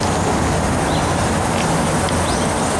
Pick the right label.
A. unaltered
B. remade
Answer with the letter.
A